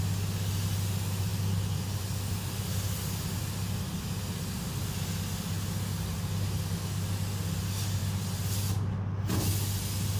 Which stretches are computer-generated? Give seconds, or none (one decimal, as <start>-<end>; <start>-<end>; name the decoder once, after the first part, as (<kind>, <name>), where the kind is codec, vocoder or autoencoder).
1.3-2.0 (vocoder, BigVGAN v2)